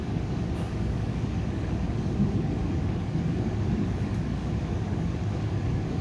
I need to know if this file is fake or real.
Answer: fake